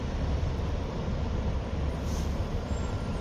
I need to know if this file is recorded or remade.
remade